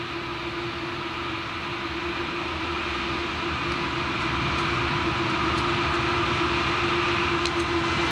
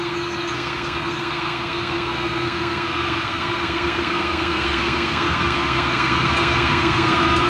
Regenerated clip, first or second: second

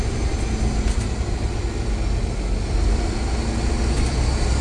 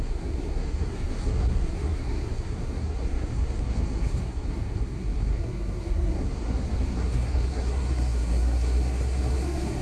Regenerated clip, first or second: second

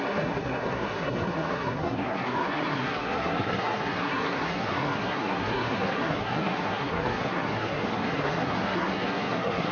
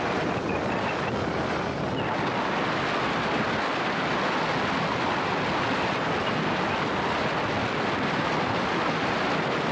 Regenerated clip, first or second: first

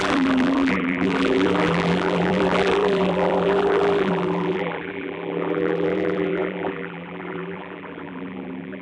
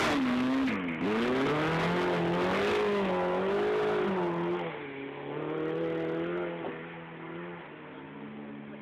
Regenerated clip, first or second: first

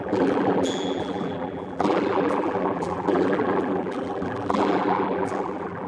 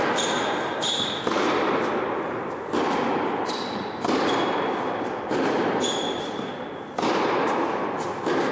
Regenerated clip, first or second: first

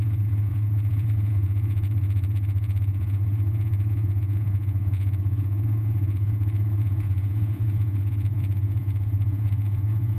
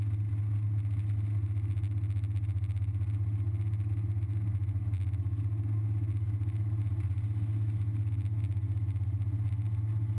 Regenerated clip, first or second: first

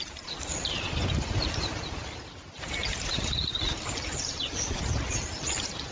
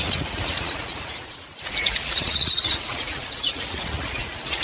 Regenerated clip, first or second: second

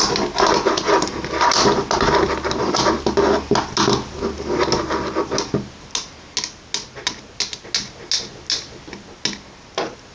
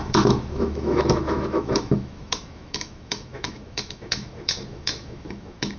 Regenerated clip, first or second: second